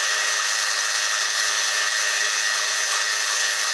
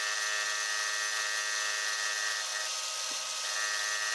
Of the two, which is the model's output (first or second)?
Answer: first